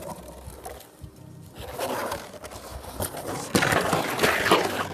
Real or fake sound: real